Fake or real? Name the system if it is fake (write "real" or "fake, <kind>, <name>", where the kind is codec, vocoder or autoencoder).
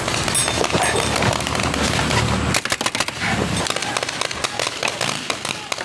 real